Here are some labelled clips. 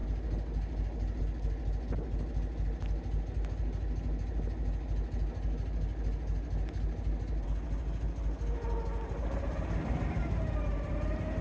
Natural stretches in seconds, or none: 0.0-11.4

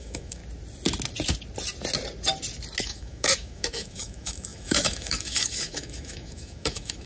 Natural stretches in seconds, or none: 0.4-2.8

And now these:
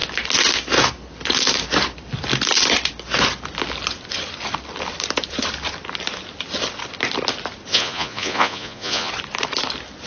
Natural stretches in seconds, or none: 0.0-7.7; 9.1-10.1

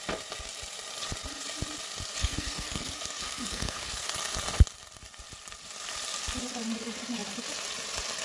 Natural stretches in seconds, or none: 0.0-2.2; 4.1-8.2

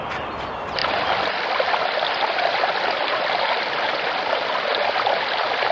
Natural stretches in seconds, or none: 0.0-5.7